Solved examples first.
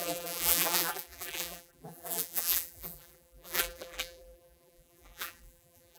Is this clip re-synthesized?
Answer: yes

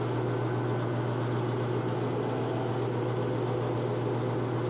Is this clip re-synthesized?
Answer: no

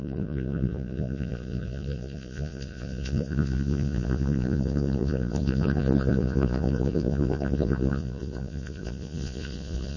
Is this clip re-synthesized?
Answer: yes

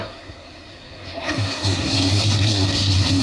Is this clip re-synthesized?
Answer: yes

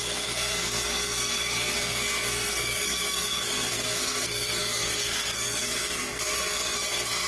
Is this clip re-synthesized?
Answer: yes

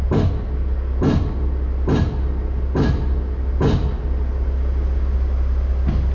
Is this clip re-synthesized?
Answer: no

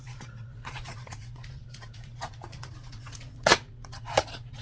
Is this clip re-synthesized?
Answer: yes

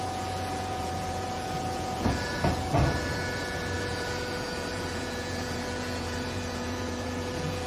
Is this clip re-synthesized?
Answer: yes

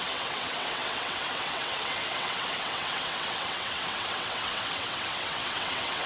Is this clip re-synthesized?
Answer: yes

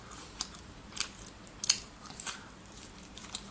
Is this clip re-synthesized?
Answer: yes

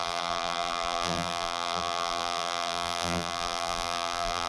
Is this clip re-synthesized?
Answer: yes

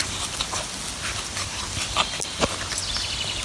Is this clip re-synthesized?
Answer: no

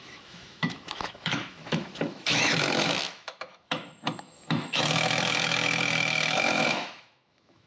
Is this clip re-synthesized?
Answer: yes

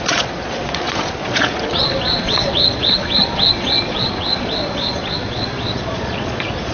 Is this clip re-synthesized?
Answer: yes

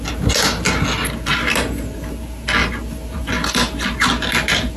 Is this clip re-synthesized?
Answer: no